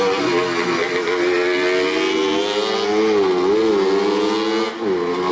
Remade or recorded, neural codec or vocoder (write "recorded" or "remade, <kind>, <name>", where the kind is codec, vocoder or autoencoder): recorded